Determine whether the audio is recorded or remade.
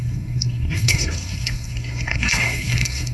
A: remade